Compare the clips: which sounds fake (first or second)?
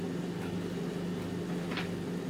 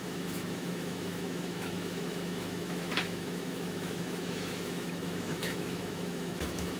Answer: second